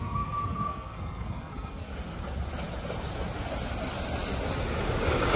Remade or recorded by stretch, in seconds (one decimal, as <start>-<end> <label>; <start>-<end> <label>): 0.0-1.9 remade; 1.9-5.4 recorded